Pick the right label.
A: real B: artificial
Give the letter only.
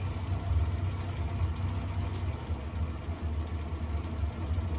A